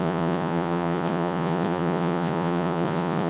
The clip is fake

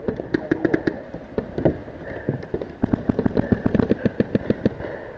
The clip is real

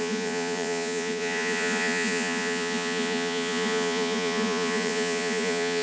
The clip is fake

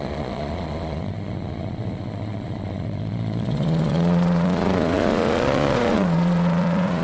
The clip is fake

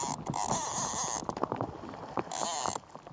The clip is real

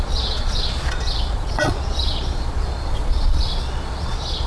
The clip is fake